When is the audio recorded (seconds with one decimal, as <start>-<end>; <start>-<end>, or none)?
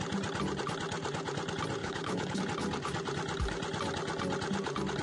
0.0-1.8; 2.4-5.0